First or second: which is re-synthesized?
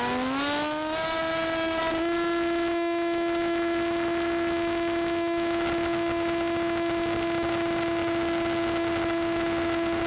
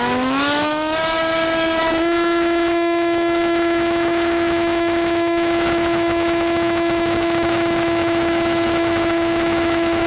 second